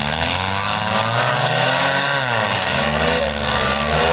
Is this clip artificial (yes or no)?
yes